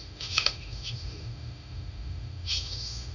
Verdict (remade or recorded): remade